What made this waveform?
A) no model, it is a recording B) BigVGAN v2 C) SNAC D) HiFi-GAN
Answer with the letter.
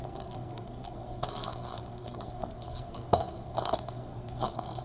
C